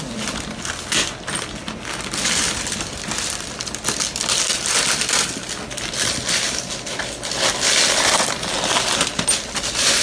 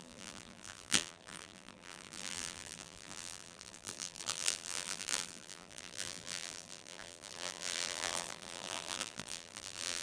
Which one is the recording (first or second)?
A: first